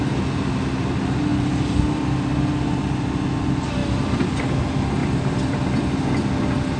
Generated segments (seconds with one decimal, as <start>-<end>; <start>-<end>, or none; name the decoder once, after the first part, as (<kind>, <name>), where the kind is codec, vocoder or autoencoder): 1.3-2.8 (vocoder, BigVGAN v2); 3.8-4.4; 5.0-6.1